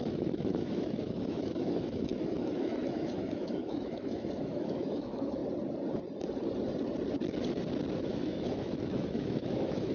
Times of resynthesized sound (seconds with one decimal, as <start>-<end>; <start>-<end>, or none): 0.0-5.4; 8.0-9.9